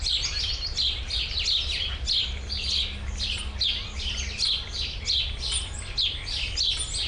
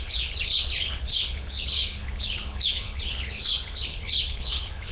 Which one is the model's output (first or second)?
second